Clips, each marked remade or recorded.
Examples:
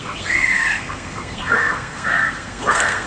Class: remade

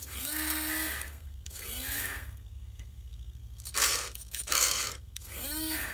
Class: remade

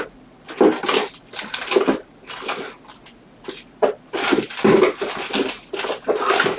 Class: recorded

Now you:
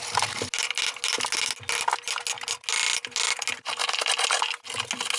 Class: recorded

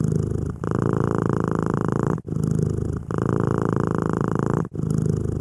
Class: recorded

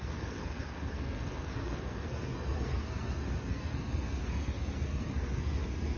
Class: remade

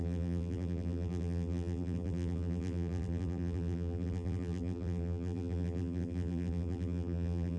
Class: remade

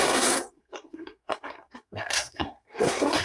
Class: remade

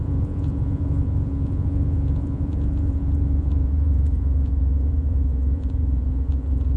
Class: remade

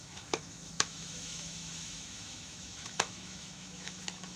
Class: remade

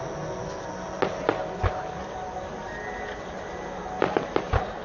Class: recorded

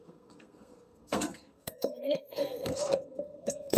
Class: remade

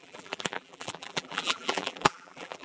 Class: remade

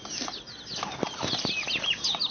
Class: recorded